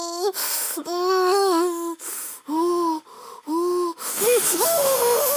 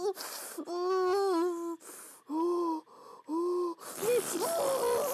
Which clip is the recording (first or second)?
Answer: second